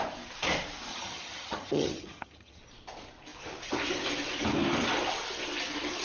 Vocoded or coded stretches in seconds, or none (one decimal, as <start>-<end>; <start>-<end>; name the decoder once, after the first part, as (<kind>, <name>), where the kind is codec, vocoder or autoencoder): 0.9-2.6 (vocoder, HiFi-GAN)